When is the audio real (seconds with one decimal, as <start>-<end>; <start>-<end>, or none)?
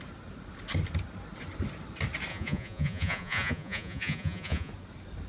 0.0-2.3; 4.7-5.3